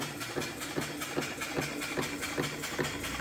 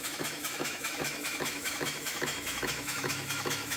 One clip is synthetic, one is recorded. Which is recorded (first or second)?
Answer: first